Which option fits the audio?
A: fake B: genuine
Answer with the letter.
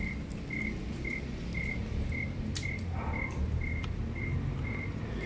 B